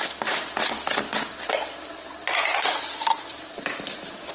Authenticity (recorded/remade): remade